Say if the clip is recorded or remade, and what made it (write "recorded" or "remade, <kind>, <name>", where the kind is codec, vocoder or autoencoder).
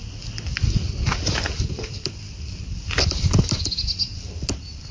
recorded